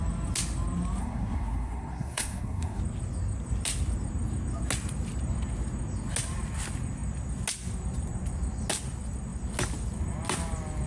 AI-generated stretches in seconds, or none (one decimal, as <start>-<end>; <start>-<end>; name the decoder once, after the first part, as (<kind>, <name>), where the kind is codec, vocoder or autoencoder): 1.0-2.8 (codec, SNAC)